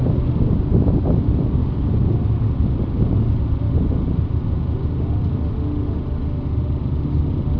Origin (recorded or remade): recorded